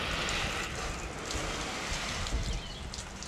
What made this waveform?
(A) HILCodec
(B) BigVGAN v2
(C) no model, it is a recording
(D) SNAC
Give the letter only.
C